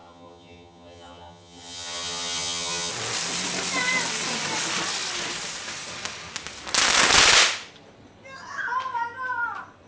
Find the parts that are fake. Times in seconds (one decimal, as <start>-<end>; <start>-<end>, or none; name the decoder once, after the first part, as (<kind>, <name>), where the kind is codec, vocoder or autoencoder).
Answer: 0.0-2.9 (vocoder, HiFi-GAN)